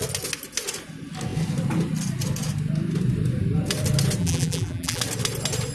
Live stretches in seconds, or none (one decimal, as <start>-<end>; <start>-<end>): 0.0-4.2; 5.0-5.7